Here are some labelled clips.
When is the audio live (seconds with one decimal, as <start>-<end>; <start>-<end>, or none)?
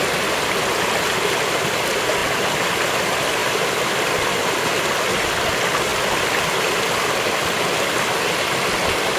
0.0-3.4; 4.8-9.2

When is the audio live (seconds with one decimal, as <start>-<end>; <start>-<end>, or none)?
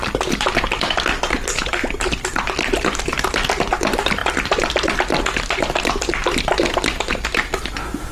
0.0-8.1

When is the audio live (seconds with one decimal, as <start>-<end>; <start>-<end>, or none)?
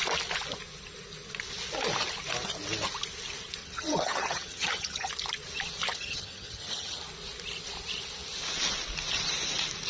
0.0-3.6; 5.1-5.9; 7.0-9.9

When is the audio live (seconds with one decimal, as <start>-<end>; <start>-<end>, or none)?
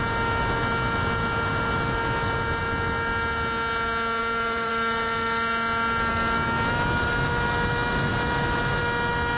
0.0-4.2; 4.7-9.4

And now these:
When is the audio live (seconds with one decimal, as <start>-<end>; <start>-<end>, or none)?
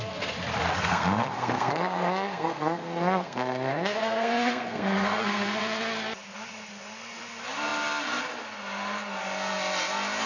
0.0-0.7; 5.8-10.3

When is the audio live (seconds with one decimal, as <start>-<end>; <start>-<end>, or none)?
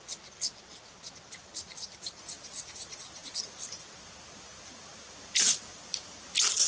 0.0-6.7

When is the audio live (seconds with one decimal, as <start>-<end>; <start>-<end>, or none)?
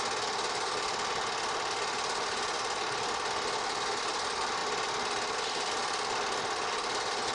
0.0-7.3